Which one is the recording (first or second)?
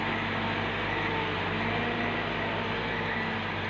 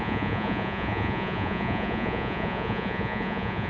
first